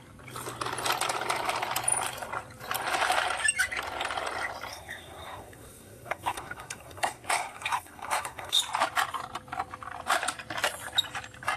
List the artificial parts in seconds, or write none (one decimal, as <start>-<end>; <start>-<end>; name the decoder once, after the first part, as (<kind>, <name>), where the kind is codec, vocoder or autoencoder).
4.7-8.6 (codec, SNAC)